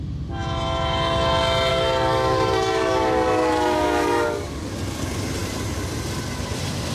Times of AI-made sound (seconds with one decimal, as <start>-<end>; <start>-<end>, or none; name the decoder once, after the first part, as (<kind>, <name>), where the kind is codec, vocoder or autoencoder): 1.7-4.7 (codec, DAC)